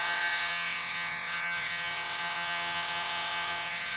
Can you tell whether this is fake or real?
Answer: fake